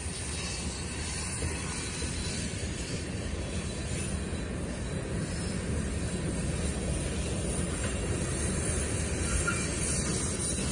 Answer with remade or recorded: recorded